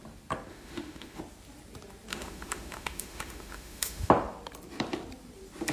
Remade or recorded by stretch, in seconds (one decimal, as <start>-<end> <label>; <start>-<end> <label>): 0.0-0.5 recorded; 0.5-1.2 remade; 1.2-2.1 recorded; 2.1-4.1 remade; 4.1-5.7 recorded